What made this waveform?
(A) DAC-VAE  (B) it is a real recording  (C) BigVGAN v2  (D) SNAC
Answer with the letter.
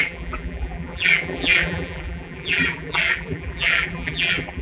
C